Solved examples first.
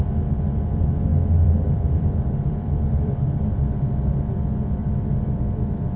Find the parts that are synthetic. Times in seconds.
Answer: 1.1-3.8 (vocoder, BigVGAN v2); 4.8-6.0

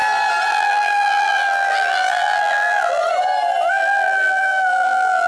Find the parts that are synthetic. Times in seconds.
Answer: 0.5-3.0 (vocoder, BigVGAN v2); 3.7-5.3

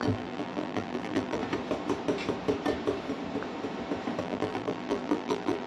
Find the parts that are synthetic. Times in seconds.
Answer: 0.0-1.4 (vocoder, BigVGAN v2); 4.2-5.7

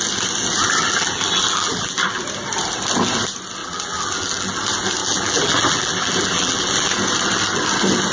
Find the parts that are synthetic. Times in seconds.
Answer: 0.6-2.2 (vocoder, BigVGAN v2); 3.6-4.6; 5.0-6.9

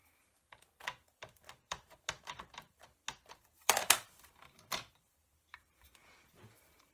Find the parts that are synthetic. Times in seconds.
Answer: 0.0-6.9 (vocoder, BigVGAN v2)

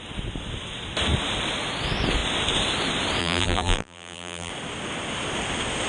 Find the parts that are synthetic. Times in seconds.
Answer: 3.2-4.5 (vocoder, BigVGAN v2)

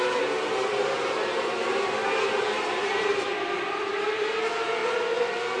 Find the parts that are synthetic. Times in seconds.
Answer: 0.0-4.8 (vocoder, BigVGAN v2)